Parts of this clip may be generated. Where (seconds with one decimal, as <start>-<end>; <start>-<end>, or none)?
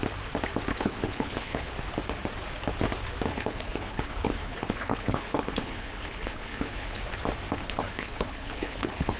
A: 0.7-1.7; 3.3-7.0; 7.6-9.2